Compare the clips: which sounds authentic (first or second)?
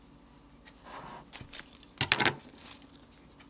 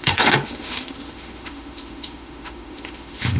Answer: first